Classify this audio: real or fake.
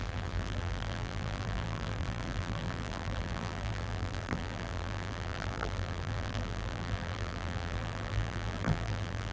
fake